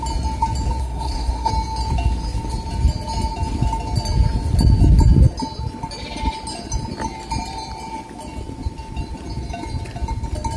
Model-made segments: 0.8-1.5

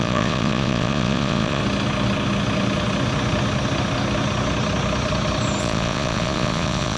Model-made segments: 0.0-1.6; 5.6-7.0

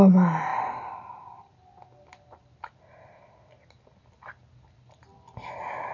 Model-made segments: none

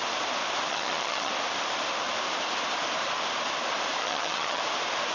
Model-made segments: 0.7-1.3; 4.0-4.6

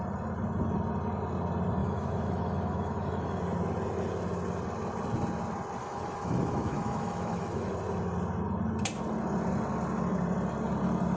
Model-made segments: 1.8-3.4; 5.8-7.7

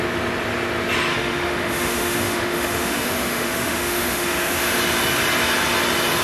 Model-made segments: 1.1-4.8

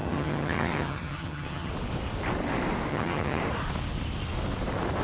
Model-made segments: 0.0-1.7; 2.9-3.4

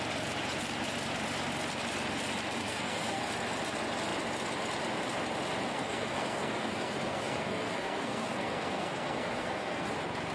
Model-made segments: 2.6-3.2; 5.7-9.9